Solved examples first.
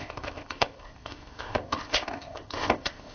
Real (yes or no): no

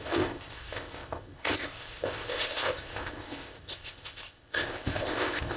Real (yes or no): no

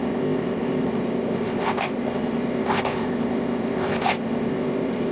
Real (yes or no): no